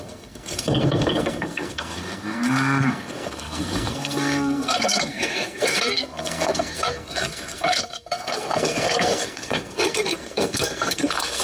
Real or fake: fake